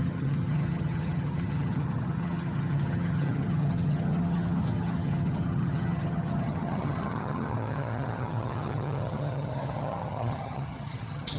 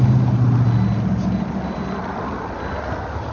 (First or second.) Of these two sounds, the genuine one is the second